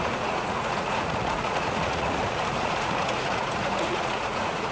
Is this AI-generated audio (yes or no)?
yes